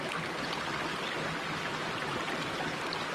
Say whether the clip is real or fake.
real